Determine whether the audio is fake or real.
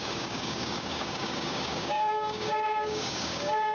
fake